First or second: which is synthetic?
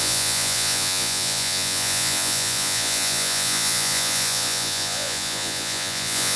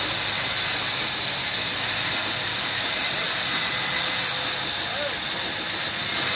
first